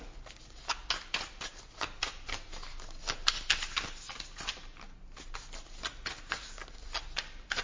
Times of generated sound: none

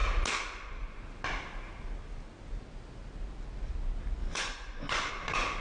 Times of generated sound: 4.2-5.1 (vocoder, Vocos)

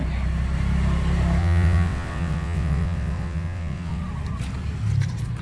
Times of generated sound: 1.4-4.0 (vocoder, WaveNeXt)

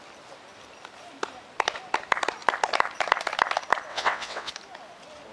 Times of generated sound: 3.9-4.5 (vocoder, WaveNeXt)

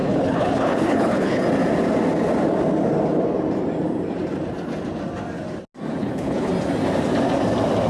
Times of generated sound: 0.0-1.4 (codec, HILCodec); 6.0-6.5